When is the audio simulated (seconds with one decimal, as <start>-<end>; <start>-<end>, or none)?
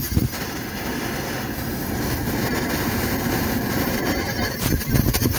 1.7-4.9